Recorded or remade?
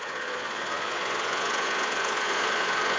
remade